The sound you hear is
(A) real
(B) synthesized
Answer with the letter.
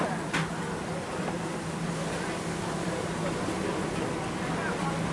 A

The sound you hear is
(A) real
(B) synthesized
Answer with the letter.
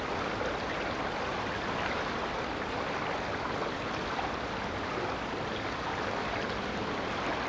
A